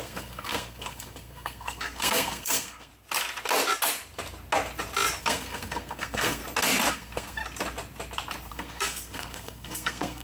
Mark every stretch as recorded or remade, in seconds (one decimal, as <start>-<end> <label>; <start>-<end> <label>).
0.0-2.9 remade; 2.9-5.2 recorded; 5.2-6.4 remade; 6.4-6.9 recorded; 6.9-7.4 remade; 7.4-8.5 recorded; 8.5-10.2 remade